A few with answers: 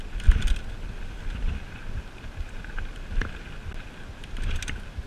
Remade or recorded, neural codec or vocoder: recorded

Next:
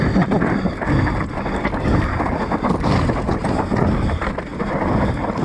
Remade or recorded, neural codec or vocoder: recorded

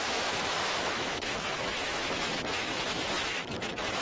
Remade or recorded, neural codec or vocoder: remade, autoencoder, DAC-VAE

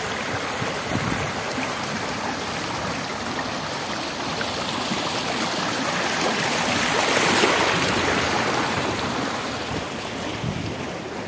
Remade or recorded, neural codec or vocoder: recorded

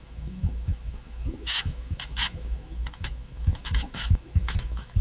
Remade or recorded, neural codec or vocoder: remade, autoencoder, DAC-VAE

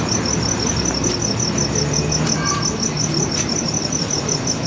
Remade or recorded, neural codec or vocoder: recorded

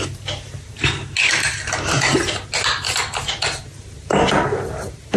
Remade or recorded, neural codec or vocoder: recorded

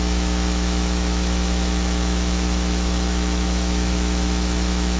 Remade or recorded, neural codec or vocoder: remade, autoencoder, DAC-VAE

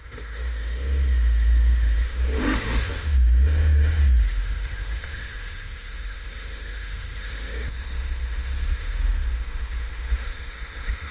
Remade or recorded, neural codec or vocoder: remade, autoencoder, DAC-VAE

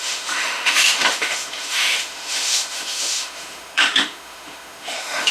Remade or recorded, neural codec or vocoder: remade, autoencoder, DAC-VAE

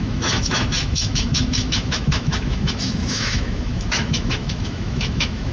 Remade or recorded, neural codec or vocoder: remade, autoencoder, DAC-VAE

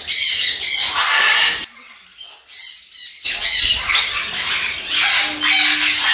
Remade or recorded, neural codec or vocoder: recorded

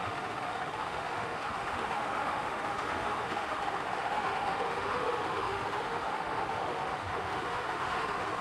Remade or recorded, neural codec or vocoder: remade, autoencoder, DAC-VAE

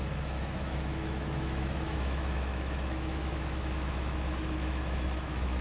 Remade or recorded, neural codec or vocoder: remade, autoencoder, DAC-VAE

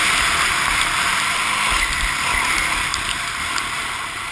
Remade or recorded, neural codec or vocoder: recorded